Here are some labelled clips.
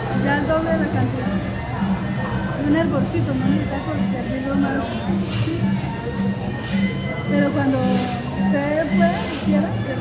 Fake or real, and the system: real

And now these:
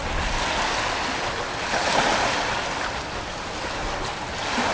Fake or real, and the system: real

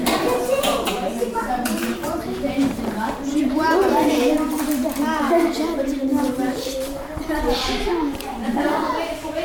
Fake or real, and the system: fake, vocoder, BigVGAN v2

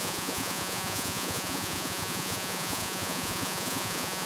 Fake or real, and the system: fake, vocoder, Vocos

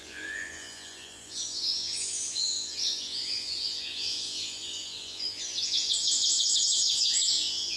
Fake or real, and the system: fake, vocoder, Vocos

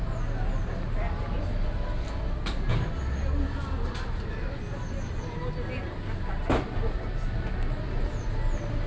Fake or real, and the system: real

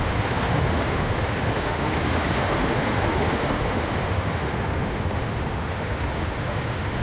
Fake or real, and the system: fake, autoencoder, DAC-VAE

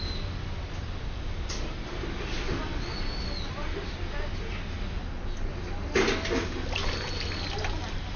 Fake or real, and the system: real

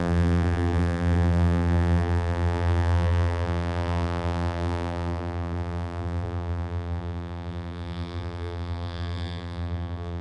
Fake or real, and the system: fake, vocoder, BigVGAN v2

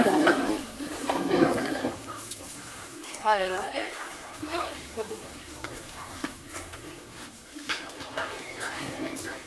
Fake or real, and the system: fake, codec, SNAC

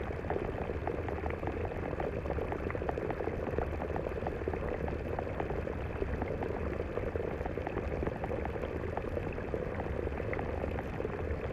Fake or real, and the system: real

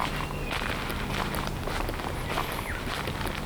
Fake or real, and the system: real